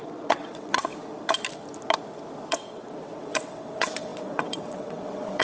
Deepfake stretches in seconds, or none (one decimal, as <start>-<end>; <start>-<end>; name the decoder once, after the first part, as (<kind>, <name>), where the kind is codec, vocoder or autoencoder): 0.0-0.9 (vocoder, WaveNeXt); 2.5-5.4